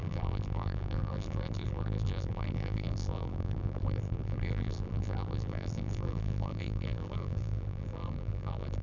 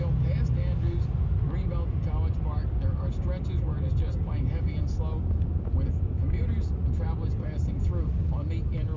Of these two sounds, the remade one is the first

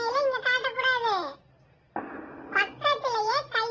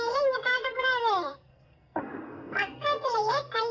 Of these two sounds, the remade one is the second